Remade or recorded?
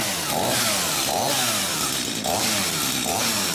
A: recorded